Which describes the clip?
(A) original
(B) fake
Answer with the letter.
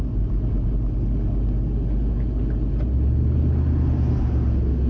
A